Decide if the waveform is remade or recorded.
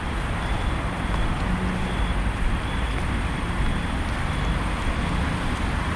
recorded